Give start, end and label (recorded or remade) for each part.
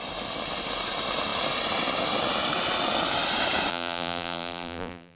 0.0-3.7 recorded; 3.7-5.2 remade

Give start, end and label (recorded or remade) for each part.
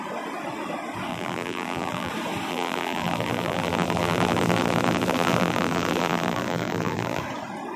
0.0-1.1 recorded; 1.1-2.1 remade; 2.1-2.5 recorded; 2.5-7.2 remade; 7.2-7.8 recorded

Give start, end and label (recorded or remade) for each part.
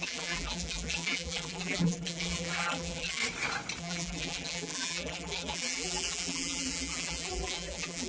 0.0-3.2 remade; 3.2-3.8 recorded; 3.8-8.1 remade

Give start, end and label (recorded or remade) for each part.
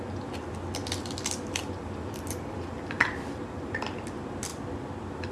0.0-1.6 recorded; 1.6-3.7 remade; 3.7-5.3 recorded